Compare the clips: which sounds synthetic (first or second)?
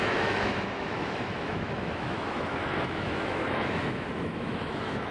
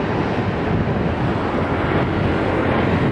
first